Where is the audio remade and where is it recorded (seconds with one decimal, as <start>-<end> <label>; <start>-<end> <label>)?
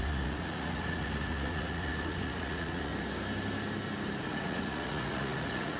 0.0-2.9 remade; 2.9-4.2 recorded; 4.2-5.8 remade